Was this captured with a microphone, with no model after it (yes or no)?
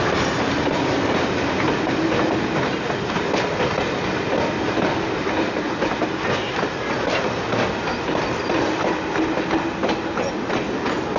yes